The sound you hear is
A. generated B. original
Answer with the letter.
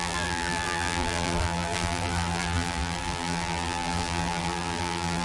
A